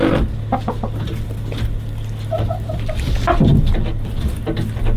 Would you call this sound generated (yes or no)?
no